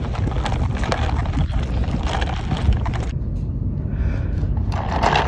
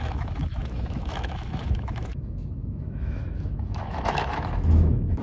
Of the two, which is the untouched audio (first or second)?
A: first